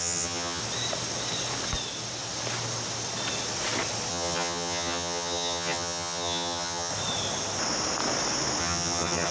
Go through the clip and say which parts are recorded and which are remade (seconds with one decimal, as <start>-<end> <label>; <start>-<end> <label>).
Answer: 0.0-0.6 remade; 0.6-4.1 recorded; 4.1-6.9 remade; 6.9-8.6 recorded; 8.6-9.3 remade